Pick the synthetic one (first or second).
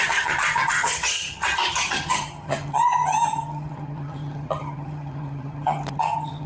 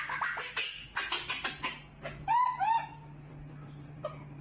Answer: first